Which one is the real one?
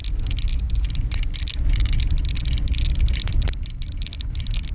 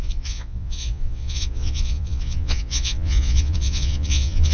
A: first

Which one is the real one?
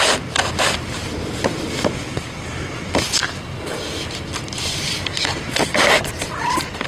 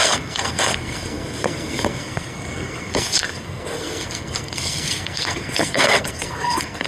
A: first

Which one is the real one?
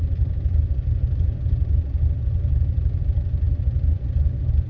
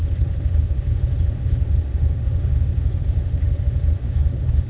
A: first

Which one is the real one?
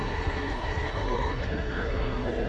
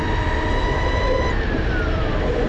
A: second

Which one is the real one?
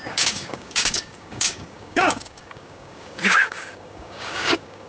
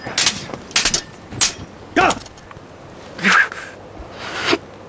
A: second